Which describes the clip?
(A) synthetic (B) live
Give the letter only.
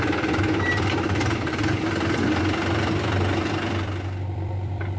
A